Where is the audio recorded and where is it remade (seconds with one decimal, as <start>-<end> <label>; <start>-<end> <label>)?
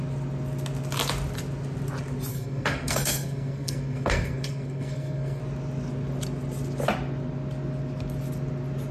0.0-2.3 recorded; 2.3-5.4 remade; 5.4-8.9 recorded